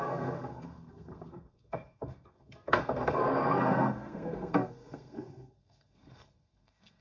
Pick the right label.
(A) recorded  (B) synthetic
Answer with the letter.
B